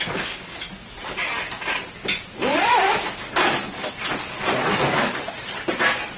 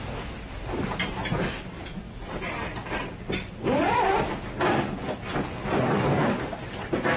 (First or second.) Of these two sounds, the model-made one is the second